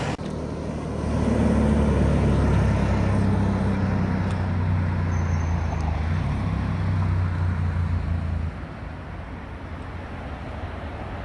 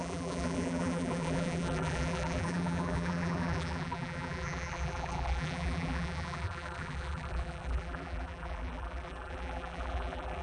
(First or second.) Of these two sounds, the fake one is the second